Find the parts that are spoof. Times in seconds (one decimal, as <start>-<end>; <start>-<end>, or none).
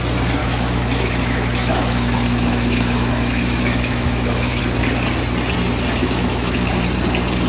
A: 0.4-4.6; 6.0-6.7